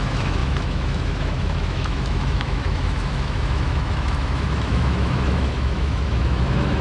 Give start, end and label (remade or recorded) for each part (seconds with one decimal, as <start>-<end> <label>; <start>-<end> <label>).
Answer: 0.0-6.8 remade